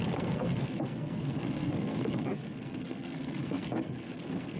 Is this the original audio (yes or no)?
no